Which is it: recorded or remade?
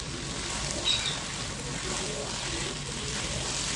recorded